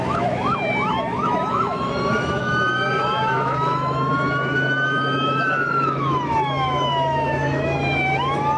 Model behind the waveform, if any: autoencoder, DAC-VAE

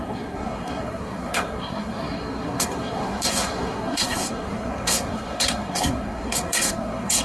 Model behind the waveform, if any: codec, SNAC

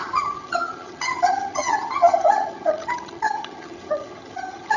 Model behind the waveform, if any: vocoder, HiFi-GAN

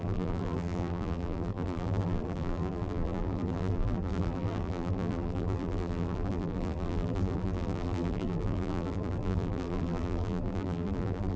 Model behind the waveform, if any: vocoder, BigVGAN v2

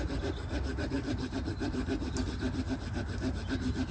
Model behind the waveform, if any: none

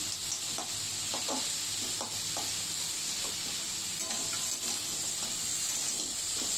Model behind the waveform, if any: none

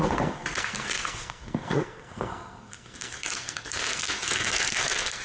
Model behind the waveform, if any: codec, SNAC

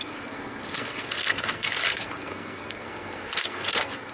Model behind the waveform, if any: codec, SNAC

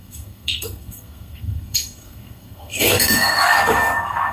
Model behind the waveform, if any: codec, SNAC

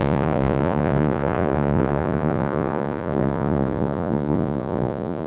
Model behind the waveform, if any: vocoder, Vocos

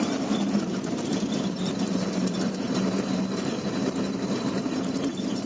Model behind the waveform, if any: vocoder, BigVGAN v2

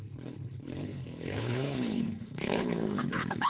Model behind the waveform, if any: codec, HILCodec